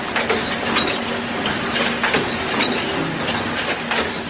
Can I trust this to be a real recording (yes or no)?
yes